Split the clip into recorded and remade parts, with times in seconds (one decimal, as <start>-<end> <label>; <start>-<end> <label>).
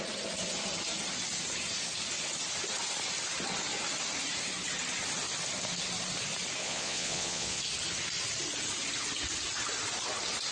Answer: 0.0-6.6 recorded; 6.6-7.6 remade; 7.6-10.5 recorded